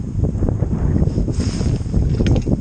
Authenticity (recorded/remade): recorded